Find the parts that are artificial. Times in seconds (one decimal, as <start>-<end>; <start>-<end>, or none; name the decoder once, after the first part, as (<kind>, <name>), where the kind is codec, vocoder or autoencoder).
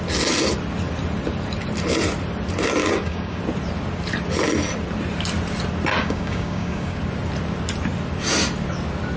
2.8-3.4 (codec, DAC); 6.0-7.0